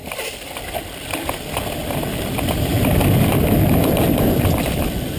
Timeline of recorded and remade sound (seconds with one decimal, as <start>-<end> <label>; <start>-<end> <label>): 0.0-1.8 remade; 1.8-3.3 recorded; 3.3-5.2 remade